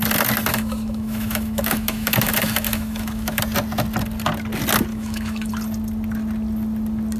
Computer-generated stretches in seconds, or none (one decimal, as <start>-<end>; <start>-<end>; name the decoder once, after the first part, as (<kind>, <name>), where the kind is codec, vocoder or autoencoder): 0.5-3.4 (autoencoder, DAC-VAE); 4.9-5.5